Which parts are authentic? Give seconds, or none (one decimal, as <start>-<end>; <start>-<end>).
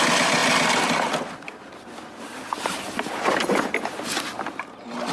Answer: 0.0-5.1